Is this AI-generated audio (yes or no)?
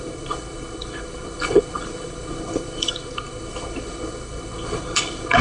yes